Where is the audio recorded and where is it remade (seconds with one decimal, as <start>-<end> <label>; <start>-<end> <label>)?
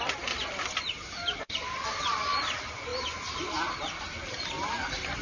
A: 0.0-5.2 recorded